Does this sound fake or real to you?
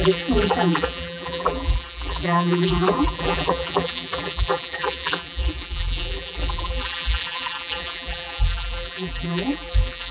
fake